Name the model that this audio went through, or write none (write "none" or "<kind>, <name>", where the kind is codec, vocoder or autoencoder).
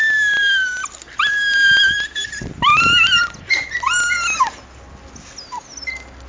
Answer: none